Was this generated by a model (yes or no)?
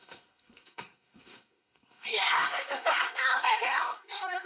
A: yes